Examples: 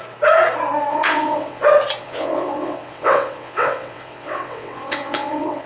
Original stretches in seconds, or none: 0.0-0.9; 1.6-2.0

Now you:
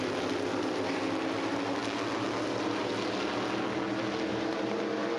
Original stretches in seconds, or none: 0.0-5.2